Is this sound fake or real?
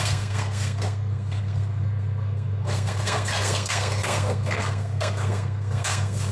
fake